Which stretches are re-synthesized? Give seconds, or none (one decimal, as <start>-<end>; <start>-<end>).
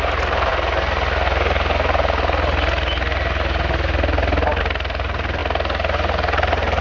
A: 0.0-0.5; 4.6-5.4